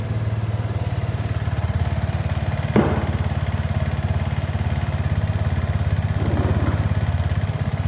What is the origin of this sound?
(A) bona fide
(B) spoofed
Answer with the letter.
A